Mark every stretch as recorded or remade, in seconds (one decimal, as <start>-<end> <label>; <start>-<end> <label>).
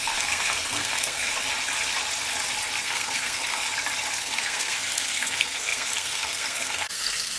0.0-1.3 remade; 1.3-2.8 recorded; 2.8-3.6 remade; 3.6-4.2 recorded; 4.2-7.4 remade